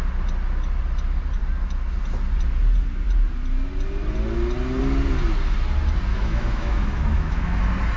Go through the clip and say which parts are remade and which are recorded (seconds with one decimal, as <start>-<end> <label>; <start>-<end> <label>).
0.0-6.1 recorded; 6.1-7.6 remade; 7.6-8.0 recorded